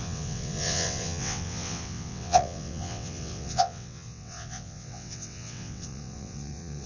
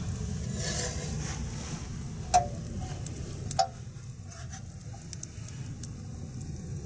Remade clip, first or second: first